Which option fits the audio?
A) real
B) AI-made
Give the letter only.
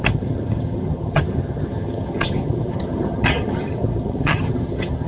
B